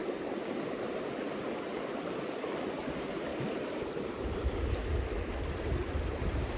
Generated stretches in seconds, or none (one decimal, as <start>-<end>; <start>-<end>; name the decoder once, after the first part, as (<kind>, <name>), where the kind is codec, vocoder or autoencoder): 3.3-5.4 (vocoder, BigVGAN v2)